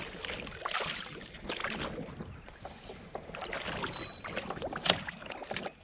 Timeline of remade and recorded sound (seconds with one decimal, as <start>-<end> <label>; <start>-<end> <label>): 0.0-5.8 recorded